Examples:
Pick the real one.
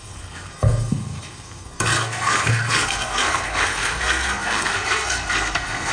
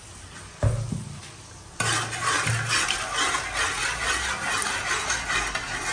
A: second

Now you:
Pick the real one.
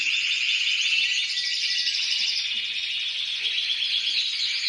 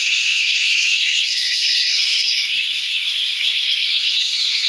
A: first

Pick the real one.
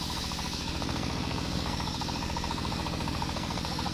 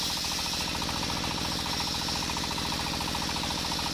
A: second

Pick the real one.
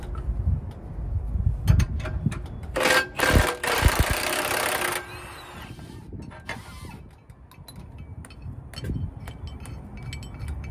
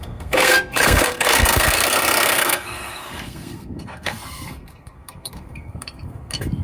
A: first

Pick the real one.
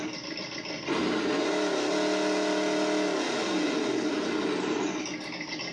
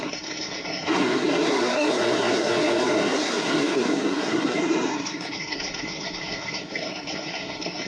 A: first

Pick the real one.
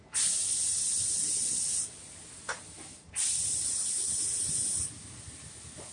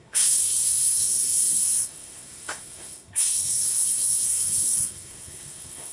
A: first